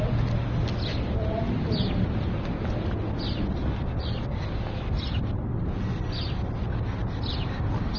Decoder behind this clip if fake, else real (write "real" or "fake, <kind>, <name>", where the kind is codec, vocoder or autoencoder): real